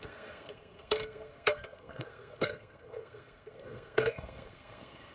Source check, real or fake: fake